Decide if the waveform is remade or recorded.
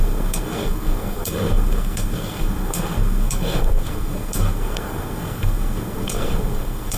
remade